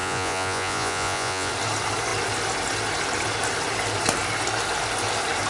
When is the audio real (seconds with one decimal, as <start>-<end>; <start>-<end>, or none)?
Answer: 1.5-5.5